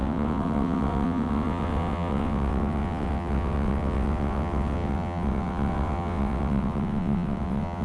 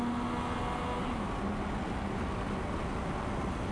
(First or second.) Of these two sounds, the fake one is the first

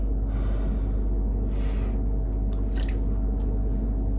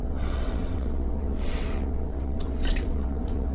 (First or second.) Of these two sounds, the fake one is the second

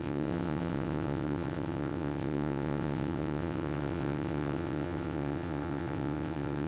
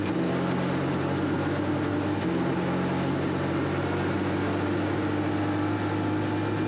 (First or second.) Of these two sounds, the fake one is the first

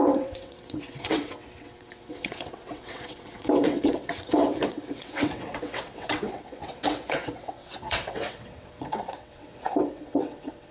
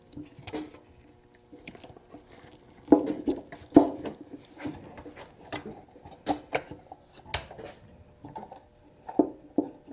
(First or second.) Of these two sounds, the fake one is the first